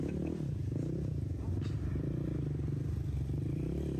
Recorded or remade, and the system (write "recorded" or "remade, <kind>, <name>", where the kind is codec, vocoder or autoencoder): recorded